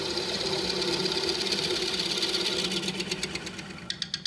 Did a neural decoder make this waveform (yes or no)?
no